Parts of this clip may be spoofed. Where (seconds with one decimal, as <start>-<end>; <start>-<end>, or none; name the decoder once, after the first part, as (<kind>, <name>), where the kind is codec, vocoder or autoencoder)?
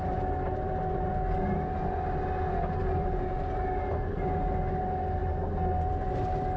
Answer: none